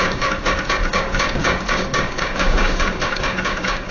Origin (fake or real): fake